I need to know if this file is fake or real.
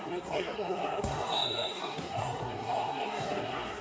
fake